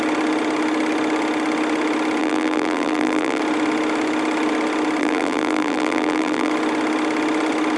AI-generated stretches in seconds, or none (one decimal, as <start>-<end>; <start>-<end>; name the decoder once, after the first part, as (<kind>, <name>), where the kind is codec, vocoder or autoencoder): 2.2-3.4 (vocoder, BigVGAN v2); 5.0-6.5